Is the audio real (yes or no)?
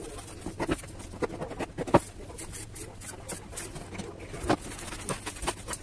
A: yes